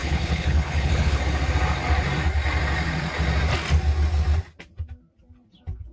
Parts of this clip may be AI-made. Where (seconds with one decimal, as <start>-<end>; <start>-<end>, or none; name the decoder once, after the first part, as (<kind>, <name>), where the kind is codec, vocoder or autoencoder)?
0.0-1.2 (codec, HILCodec)